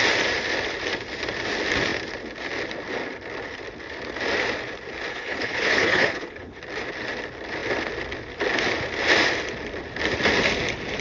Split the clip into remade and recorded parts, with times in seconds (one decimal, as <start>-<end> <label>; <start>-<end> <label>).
0.0-5.1 recorded; 5.1-6.6 remade; 6.6-11.0 recorded

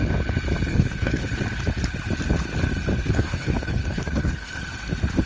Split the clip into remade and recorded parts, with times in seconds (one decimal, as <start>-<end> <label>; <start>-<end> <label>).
0.0-0.7 recorded; 0.7-1.3 remade; 1.3-3.0 recorded; 3.0-4.6 remade; 4.6-5.3 recorded

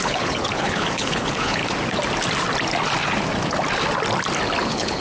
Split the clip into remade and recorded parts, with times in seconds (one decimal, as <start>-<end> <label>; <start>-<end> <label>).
0.0-1.6 remade; 1.6-4.6 recorded; 4.6-5.0 remade

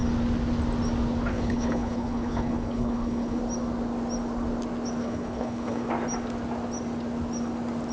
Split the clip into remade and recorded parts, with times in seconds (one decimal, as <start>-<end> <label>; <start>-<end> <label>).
0.0-1.3 recorded; 1.3-3.4 remade; 3.4-5.0 recorded; 5.0-5.9 remade; 5.9-7.9 recorded